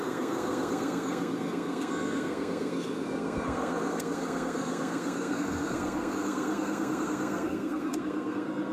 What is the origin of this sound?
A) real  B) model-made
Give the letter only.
B